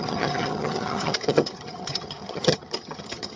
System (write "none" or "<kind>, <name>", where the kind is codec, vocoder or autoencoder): vocoder, HiFi-GAN